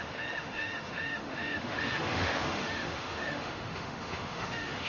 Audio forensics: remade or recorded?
remade